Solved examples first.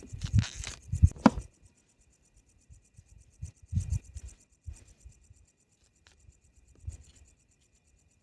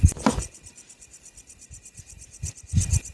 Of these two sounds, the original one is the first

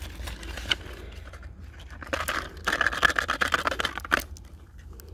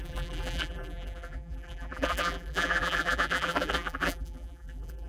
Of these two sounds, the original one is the first